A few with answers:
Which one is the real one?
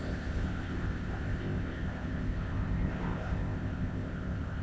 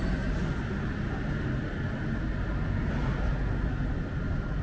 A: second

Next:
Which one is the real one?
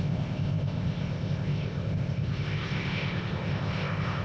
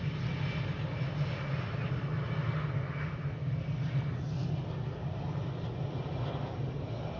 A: second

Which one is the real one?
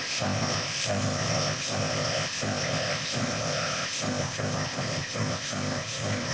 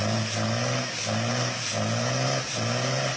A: second